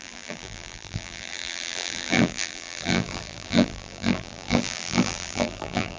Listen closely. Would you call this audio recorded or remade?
remade